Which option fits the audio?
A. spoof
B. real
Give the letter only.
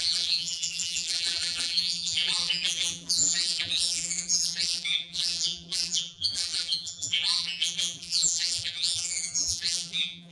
A